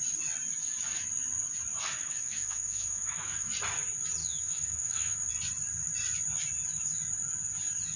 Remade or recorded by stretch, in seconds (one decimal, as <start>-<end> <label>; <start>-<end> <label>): 0.0-2.0 recorded; 2.0-3.5 remade; 3.5-4.2 recorded; 4.2-5.3 remade; 5.3-8.0 recorded